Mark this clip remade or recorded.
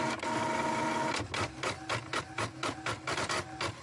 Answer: recorded